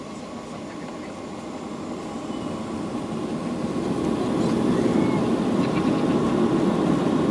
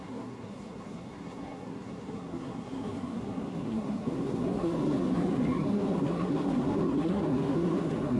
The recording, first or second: first